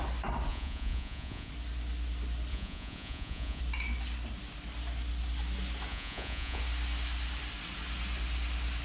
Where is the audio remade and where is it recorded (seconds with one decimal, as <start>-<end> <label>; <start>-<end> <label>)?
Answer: 0.0-0.5 recorded; 0.5-1.5 remade; 1.5-2.5 recorded; 2.5-3.6 remade; 3.6-5.9 recorded; 5.9-6.6 remade; 6.6-8.8 recorded